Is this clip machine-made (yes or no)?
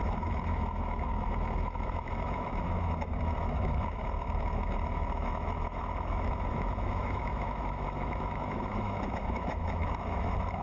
yes